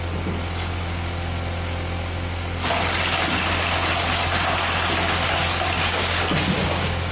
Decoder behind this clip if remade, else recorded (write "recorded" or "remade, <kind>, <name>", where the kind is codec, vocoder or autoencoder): recorded